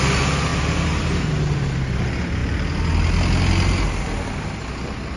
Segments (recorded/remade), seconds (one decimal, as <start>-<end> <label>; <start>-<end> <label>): 0.0-5.2 recorded